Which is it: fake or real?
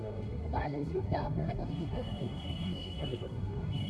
fake